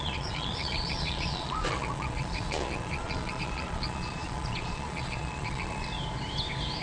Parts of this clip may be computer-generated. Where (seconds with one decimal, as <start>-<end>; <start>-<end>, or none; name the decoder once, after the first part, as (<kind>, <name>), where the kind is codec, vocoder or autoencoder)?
0.0-5.9 (vocoder, Vocos)